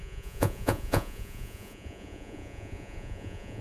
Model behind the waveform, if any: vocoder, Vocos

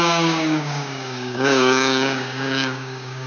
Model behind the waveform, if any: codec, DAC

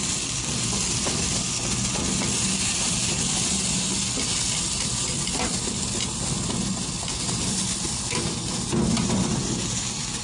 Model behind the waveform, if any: none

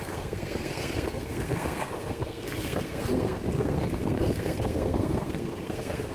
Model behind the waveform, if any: codec, SNAC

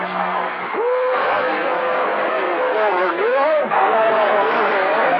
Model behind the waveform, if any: codec, SNAC